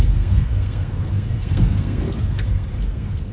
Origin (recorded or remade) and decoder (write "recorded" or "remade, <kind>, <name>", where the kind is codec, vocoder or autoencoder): remade, codec, SNAC